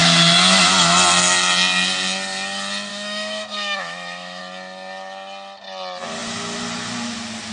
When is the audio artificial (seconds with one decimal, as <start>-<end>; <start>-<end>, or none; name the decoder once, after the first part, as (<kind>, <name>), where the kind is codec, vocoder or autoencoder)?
2.9-4.4 (autoencoder, DAC-VAE)